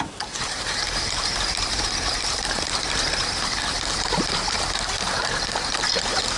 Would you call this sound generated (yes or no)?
yes